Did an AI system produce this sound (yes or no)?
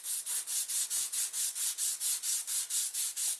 no